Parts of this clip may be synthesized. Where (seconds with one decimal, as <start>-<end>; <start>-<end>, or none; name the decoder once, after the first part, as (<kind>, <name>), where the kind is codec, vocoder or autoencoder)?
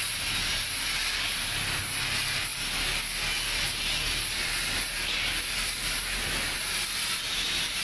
none